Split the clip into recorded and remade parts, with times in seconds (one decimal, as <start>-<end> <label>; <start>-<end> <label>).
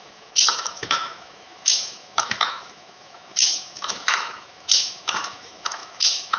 0.0-6.4 remade